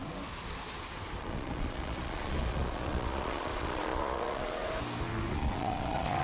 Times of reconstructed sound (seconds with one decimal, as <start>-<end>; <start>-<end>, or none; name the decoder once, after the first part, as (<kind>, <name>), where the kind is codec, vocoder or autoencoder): 1.2-4.6 (vocoder, Vocos); 5.3-6.2